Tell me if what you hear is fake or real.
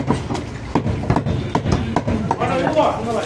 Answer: real